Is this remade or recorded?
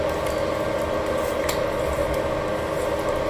recorded